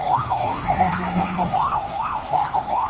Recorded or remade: remade